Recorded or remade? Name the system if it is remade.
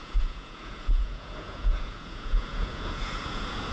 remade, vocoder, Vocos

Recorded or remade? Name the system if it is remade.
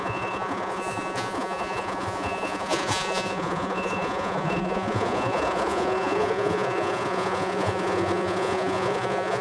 remade, vocoder, Vocos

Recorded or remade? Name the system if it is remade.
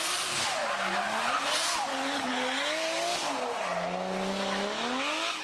recorded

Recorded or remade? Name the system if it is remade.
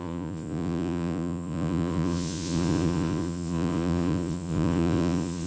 remade, vocoder, Vocos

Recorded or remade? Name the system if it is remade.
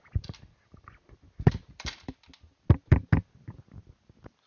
recorded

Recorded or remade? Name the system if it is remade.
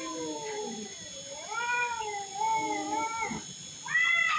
recorded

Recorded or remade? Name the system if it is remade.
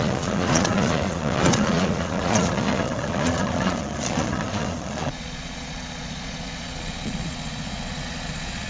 remade, vocoder, Vocos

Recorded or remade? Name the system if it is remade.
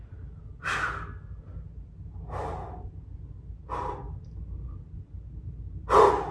recorded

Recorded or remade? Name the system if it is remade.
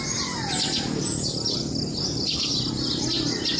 recorded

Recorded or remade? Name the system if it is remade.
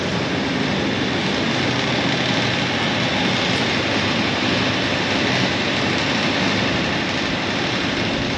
recorded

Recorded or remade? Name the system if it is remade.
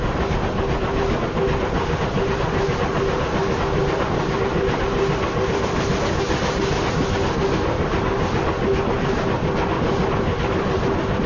recorded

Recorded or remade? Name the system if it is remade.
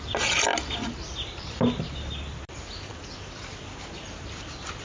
recorded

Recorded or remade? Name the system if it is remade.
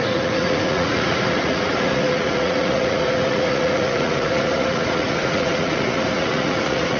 remade, vocoder, Vocos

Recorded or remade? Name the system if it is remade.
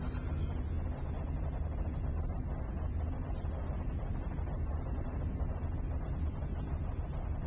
recorded